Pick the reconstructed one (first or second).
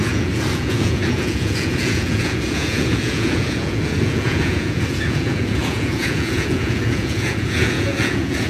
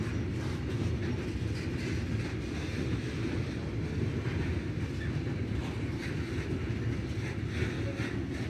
first